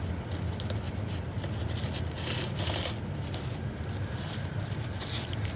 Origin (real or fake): real